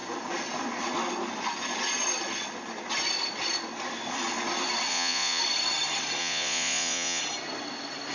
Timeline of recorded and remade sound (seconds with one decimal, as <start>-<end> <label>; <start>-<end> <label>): 0.0-4.9 recorded; 4.9-5.4 remade; 5.4-6.2 recorded; 6.2-7.2 remade; 7.2-8.1 recorded